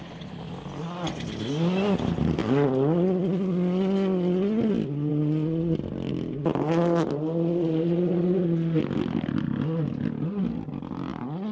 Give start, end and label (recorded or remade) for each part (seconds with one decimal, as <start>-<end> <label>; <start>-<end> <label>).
0.0-11.5 recorded